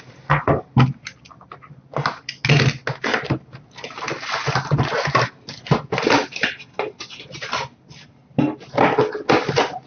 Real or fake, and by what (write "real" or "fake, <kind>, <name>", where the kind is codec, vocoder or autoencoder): real